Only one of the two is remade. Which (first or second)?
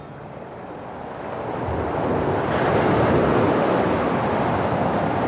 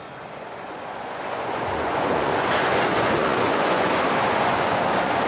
second